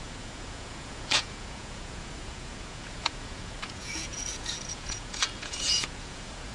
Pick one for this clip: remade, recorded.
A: remade